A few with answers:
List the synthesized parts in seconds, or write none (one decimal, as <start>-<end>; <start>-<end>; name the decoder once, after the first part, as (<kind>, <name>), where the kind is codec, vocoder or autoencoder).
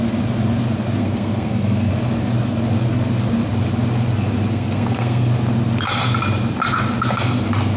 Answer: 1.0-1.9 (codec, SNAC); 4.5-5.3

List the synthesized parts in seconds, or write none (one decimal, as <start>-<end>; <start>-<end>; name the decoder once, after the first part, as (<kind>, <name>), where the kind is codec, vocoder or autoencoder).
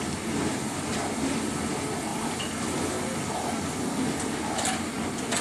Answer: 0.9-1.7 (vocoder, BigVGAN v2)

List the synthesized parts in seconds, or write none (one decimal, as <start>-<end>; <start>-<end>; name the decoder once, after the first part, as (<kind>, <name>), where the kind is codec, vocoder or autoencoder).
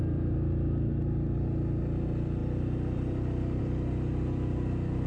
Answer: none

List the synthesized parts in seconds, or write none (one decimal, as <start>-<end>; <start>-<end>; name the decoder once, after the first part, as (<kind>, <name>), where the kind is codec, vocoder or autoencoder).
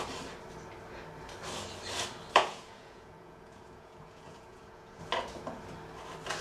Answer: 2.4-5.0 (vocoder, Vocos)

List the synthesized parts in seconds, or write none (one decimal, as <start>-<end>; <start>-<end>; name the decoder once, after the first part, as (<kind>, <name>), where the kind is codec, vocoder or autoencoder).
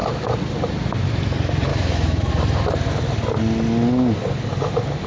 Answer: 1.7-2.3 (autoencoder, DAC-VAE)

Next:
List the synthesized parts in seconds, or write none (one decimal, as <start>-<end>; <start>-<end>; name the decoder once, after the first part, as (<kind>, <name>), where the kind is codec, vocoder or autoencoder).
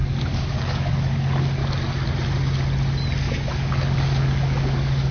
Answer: 0.0-1.6 (codec, DAC); 3.2-5.1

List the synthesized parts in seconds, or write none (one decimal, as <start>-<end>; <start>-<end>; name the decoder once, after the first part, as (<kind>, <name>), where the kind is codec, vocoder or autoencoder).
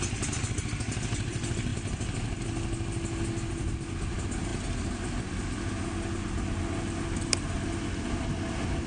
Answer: none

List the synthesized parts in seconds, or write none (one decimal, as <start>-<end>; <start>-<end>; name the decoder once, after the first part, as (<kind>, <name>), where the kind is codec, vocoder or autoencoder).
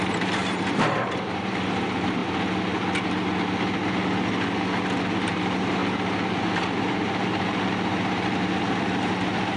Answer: 0.0-2.2 (vocoder, BigVGAN v2); 5.1-5.8; 6.4-9.6